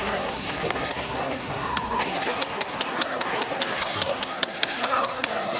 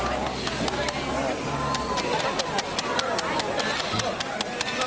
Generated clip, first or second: first